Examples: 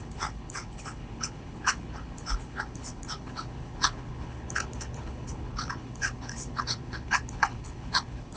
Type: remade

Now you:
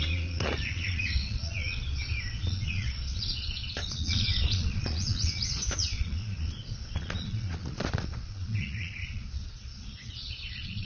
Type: remade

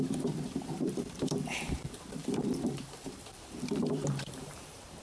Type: remade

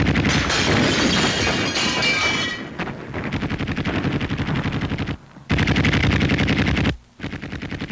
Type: recorded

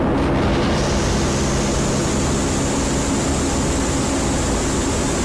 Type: recorded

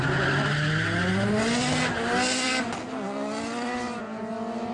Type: recorded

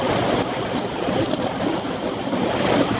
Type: recorded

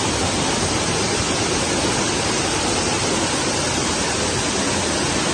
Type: recorded